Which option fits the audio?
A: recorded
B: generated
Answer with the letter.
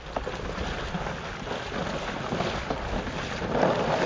A